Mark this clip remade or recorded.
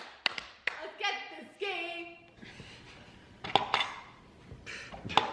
recorded